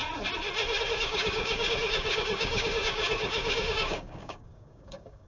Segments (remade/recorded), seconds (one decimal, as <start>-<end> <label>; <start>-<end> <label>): 0.0-0.8 recorded; 0.8-5.3 remade